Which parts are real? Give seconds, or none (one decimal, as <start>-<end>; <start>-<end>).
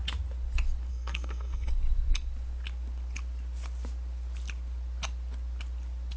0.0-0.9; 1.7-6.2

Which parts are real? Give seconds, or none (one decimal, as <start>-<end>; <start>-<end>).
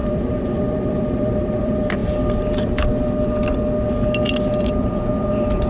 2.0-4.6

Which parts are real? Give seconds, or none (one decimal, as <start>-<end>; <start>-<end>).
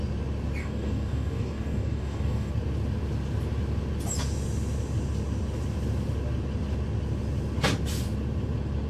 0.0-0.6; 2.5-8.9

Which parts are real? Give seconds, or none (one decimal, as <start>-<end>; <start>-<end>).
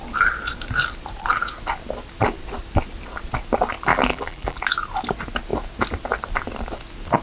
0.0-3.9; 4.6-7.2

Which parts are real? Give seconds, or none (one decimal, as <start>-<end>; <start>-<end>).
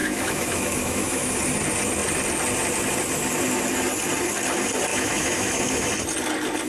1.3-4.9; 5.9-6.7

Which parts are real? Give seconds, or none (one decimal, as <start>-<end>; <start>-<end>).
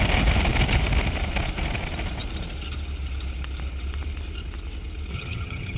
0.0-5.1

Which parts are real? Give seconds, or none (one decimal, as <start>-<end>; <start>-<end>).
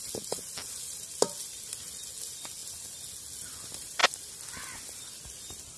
0.0-5.8